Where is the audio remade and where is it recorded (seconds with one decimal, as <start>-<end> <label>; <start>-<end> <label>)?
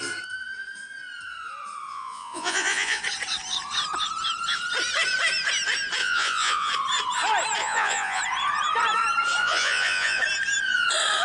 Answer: 0.0-1.9 recorded; 1.9-3.0 remade; 3.0-6.0 recorded; 6.0-6.7 remade; 6.7-7.6 recorded; 7.6-8.2 remade; 8.2-9.4 recorded; 9.4-10.2 remade; 10.2-11.2 recorded